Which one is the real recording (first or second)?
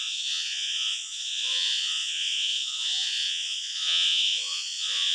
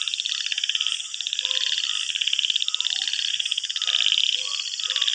second